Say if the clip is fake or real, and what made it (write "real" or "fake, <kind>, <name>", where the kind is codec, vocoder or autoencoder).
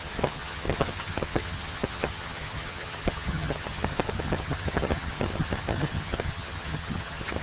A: fake, vocoder, HiFi-GAN